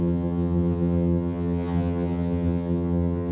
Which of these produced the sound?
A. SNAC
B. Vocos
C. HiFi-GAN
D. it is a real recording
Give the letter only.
C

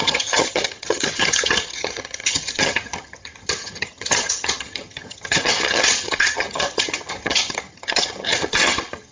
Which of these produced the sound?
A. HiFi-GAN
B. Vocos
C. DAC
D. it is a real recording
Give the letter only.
A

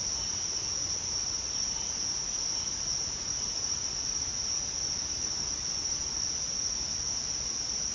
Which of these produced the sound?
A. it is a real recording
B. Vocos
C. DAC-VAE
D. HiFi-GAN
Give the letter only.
A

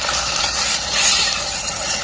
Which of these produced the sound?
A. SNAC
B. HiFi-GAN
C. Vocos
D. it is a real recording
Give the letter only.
D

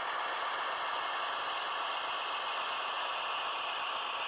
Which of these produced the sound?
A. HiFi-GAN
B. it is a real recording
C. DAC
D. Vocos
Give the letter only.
B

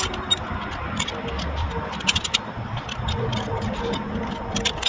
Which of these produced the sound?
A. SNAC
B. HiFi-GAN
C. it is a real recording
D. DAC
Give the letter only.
C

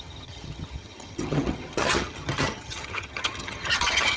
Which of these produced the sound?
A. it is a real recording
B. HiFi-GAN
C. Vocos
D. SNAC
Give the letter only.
B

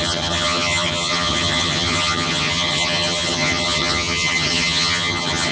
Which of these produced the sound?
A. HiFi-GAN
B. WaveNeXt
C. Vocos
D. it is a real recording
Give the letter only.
A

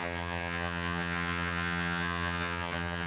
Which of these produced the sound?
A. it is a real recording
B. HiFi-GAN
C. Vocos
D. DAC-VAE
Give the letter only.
B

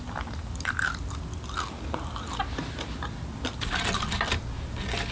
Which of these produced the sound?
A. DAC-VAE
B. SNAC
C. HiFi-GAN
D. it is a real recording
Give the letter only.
D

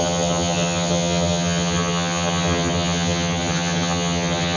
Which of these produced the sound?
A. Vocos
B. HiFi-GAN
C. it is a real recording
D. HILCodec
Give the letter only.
B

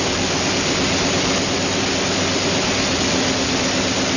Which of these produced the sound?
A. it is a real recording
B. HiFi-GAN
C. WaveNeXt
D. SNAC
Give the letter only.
A